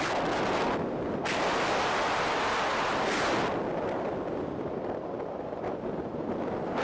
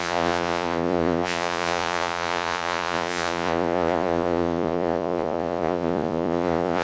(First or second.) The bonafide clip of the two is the first